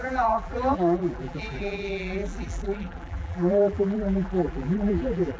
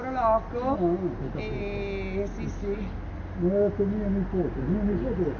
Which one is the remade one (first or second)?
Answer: first